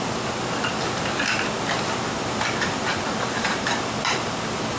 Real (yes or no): no